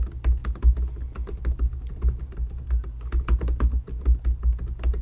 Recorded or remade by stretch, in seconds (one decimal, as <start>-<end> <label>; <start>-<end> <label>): 0.0-5.0 recorded